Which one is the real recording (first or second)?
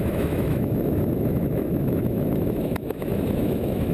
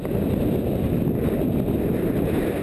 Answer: second